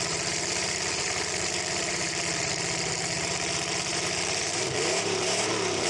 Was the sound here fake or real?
fake